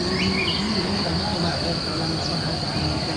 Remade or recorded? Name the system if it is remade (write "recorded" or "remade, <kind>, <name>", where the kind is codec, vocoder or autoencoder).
recorded